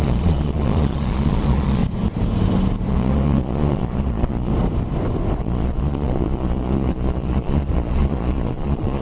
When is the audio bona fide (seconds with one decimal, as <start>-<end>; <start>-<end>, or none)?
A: 1.8-2.9; 4.5-5.4